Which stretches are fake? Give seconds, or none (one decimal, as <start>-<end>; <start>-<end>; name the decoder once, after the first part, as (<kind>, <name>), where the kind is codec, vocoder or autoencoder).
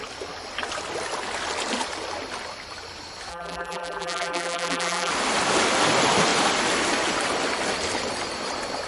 3.3-5.1 (vocoder, BigVGAN v2)